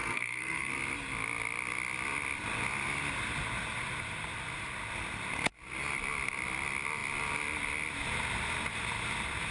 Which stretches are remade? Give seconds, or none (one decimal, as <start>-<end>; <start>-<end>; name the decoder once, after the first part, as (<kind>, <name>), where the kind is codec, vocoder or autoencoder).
0.0-0.7 (codec, SNAC)